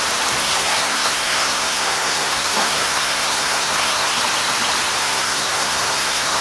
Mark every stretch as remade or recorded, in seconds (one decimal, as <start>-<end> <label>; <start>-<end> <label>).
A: 0.0-0.4 recorded; 0.4-4.2 remade; 4.2-5.0 recorded; 5.0-6.4 remade